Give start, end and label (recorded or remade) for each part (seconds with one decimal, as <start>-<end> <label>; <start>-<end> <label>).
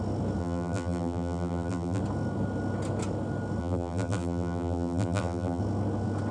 0.0-0.4 recorded; 0.4-2.0 remade; 2.0-3.6 recorded; 3.6-5.6 remade; 5.6-6.3 recorded